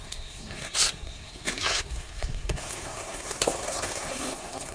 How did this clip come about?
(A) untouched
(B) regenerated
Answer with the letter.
B